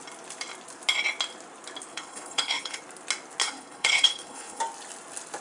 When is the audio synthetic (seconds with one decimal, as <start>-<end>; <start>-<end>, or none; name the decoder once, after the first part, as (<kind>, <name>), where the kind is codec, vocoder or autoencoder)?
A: 1.9-2.8 (codec, HILCodec); 3.4-4.6